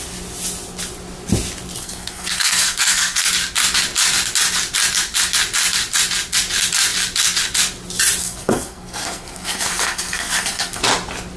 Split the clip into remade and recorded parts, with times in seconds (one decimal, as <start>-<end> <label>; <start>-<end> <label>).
0.0-1.8 recorded; 1.8-3.3 remade; 3.3-8.2 recorded; 8.2-10.8 remade; 10.8-11.4 recorded